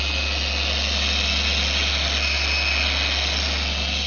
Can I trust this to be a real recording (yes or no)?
yes